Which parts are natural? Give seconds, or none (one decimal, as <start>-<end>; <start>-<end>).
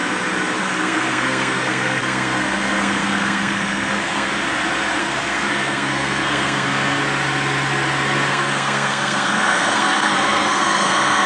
0.0-0.6; 4.3-5.0; 7.0-8.3